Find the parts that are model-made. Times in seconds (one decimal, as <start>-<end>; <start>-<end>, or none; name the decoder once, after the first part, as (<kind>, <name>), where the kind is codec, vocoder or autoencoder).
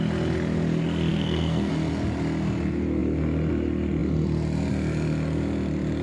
1.1-1.7 (codec, SNAC)